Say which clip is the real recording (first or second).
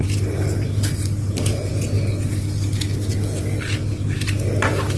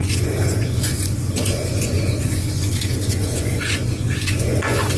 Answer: first